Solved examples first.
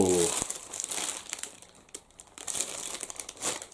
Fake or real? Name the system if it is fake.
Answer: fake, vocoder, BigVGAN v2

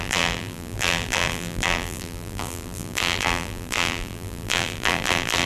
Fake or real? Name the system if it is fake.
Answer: fake, vocoder, BigVGAN v2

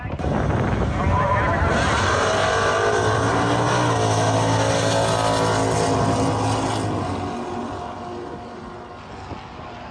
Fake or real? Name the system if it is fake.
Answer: real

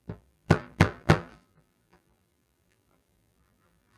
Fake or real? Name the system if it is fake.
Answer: fake, vocoder, BigVGAN v2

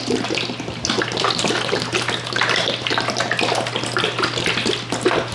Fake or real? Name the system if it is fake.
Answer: real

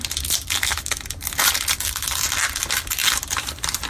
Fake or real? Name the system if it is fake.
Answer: fake, vocoder, BigVGAN v2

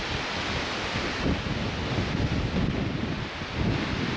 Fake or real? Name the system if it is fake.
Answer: real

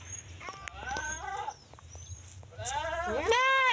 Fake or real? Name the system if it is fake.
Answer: real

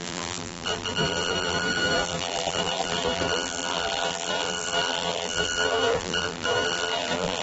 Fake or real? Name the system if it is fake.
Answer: fake, vocoder, BigVGAN v2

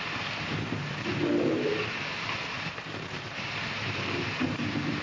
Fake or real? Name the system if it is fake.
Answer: fake, vocoder, BigVGAN v2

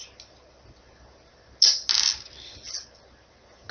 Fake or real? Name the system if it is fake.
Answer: real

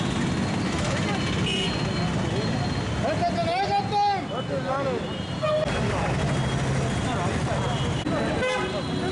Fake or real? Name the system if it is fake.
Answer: real